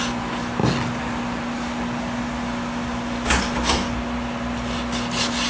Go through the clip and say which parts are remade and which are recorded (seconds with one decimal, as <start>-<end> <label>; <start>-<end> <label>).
0.0-5.5 recorded